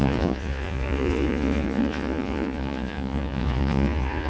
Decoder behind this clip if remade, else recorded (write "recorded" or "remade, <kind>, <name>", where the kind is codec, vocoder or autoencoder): remade, vocoder, Vocos